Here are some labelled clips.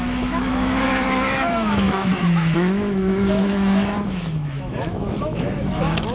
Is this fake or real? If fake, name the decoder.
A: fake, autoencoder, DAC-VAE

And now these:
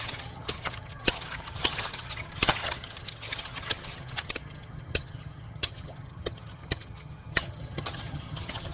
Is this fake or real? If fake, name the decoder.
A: fake, vocoder, HiFi-GAN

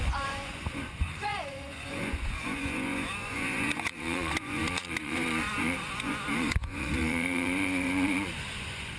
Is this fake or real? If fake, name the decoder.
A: fake, vocoder, Vocos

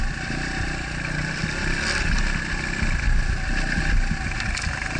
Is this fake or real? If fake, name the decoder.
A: real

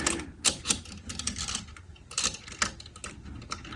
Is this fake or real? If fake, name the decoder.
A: real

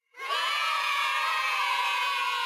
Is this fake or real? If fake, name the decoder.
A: fake, vocoder, Vocos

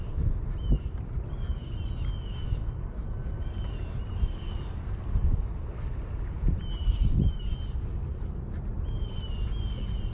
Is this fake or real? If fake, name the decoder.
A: real